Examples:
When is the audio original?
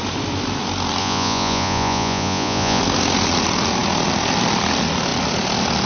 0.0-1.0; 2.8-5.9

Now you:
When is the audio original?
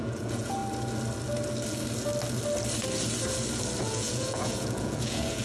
0.6-3.8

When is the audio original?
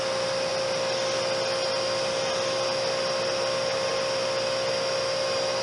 0.0-5.6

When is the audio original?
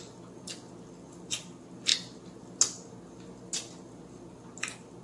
0.0-5.0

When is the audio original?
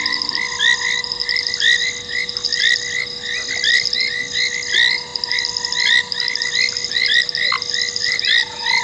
0.0-8.8